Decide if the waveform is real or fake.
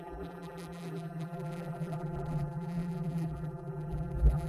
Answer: fake